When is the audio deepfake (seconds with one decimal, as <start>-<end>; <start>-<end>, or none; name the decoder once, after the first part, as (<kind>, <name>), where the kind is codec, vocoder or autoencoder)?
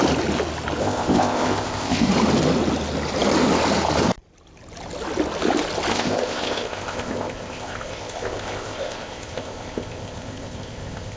0.8-2.1 (codec, ZipCodec); 5.9-11.2